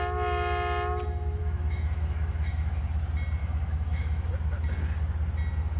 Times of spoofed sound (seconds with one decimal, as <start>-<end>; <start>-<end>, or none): 1.4-2.8; 3.4-4.3